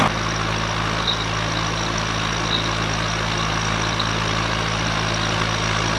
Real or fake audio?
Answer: real